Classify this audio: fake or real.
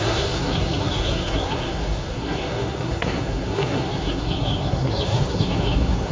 fake